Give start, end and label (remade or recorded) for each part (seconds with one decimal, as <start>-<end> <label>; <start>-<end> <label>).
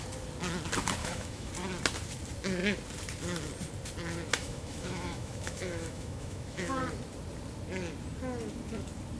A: 0.0-1.0 recorded; 1.0-1.5 remade; 1.5-4.4 recorded; 4.4-6.8 remade; 6.8-9.2 recorded